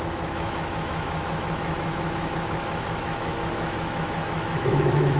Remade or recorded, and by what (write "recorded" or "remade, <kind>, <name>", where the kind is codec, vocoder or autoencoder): remade, autoencoder, DAC-VAE